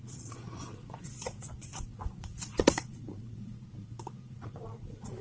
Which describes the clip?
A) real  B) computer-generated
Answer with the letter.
B